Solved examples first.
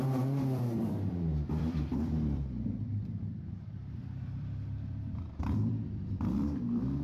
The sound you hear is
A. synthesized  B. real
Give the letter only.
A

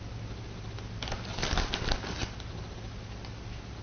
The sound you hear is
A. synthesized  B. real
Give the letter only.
B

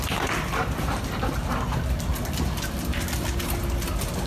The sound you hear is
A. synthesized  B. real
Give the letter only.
B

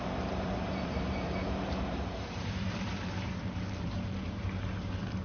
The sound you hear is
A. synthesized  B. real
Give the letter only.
A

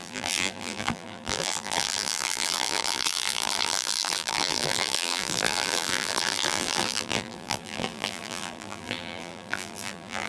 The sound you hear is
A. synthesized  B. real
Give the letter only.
A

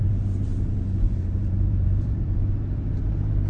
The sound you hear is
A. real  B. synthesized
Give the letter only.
B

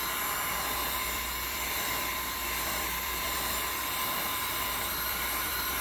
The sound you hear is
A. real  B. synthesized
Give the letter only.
B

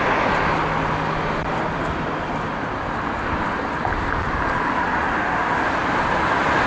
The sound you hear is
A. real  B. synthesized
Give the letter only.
A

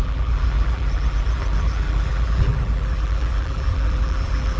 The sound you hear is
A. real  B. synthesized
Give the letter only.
B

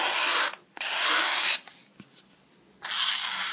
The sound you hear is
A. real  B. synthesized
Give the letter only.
A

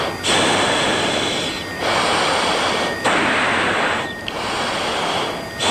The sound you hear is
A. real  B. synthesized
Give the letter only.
B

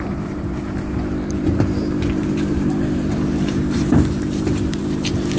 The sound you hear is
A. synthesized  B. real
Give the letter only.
A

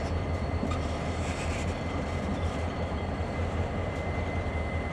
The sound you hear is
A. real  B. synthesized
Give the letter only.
B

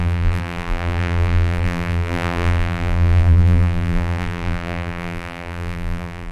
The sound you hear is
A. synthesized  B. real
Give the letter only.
A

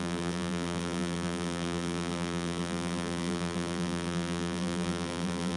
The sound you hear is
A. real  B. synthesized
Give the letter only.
B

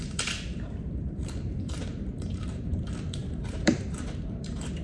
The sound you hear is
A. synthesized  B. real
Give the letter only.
A